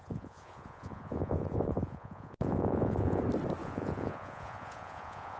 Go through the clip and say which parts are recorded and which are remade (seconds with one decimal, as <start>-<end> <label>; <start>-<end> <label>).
0.0-3.2 remade; 3.2-3.6 recorded; 3.6-5.4 remade